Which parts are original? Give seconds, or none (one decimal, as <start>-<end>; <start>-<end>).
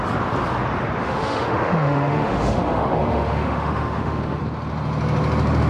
0.0-1.0; 4.4-5.7